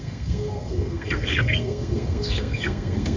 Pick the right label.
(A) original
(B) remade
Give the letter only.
B